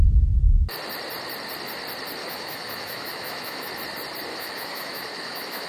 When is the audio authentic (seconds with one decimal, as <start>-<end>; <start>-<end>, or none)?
0.0-2.2; 3.7-4.3